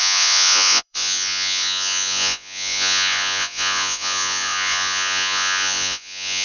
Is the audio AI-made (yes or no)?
yes